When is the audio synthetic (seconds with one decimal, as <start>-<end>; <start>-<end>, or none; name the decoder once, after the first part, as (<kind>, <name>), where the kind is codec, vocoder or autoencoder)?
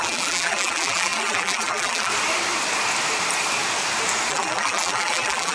0.0-2.1 (vocoder, BigVGAN v2); 4.3-5.5